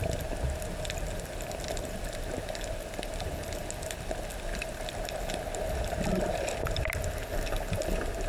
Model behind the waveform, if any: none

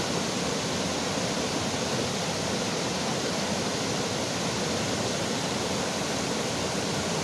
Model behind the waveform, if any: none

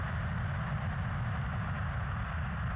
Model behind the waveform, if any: none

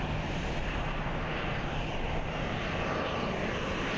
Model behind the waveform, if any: none